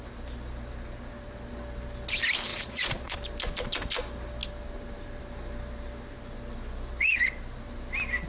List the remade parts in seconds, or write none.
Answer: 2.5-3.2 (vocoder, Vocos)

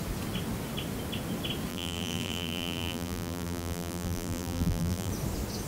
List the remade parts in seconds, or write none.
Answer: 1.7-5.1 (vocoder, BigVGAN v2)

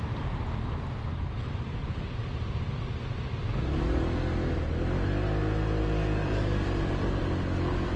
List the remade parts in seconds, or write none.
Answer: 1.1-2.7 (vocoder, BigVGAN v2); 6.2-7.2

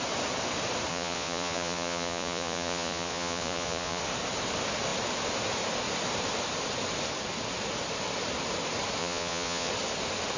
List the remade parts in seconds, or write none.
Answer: 0.9-4.0 (vocoder, Vocos); 9.0-9.7

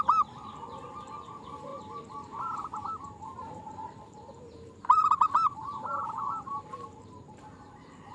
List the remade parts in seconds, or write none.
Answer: 1.7-6.6 (vocoder, BigVGAN v2)